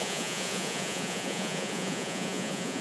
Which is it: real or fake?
fake